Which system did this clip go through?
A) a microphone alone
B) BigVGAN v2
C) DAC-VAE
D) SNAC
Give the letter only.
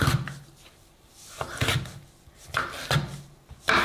A